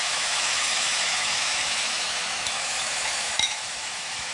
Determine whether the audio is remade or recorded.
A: remade